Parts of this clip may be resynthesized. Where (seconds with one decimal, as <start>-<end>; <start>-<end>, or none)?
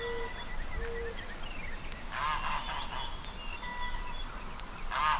none